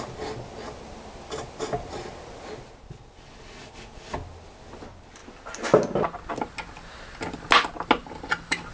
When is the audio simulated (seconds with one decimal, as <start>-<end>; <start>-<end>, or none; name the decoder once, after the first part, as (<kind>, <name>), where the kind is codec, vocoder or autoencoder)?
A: 8.0-8.7 (vocoder, BigVGAN v2)